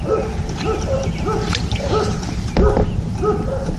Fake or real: real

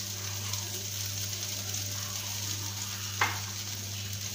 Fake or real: real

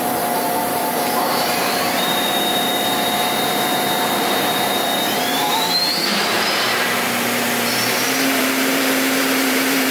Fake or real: fake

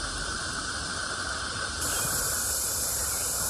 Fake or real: fake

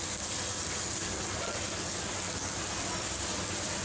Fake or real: real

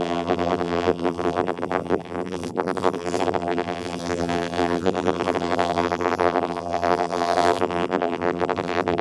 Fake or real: fake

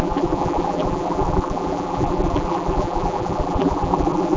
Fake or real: fake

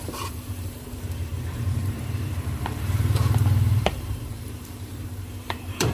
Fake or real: fake